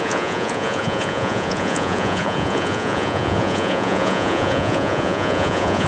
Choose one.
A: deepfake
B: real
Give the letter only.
A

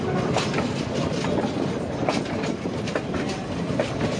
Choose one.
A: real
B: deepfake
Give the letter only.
A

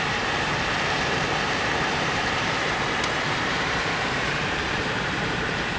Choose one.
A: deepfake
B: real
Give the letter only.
A